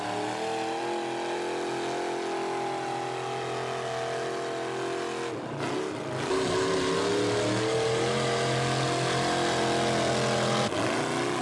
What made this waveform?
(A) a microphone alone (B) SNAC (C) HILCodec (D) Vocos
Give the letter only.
A